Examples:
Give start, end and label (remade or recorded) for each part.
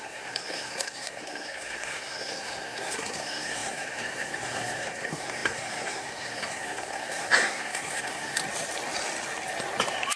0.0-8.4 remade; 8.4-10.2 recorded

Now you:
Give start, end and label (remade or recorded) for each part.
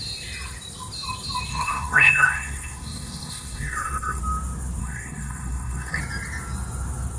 0.0-1.5 recorded; 1.5-4.2 remade; 4.2-4.8 recorded; 4.8-6.0 remade; 6.0-7.2 recorded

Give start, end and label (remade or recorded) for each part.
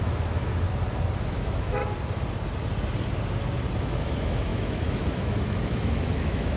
0.0-0.5 remade; 0.5-1.3 recorded; 1.3-1.8 remade; 1.8-3.8 recorded; 3.8-6.6 remade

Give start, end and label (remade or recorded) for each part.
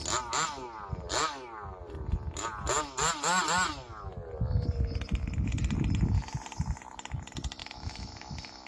0.0-7.6 recorded; 7.6-8.7 remade